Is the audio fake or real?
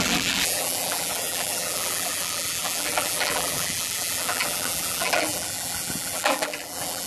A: fake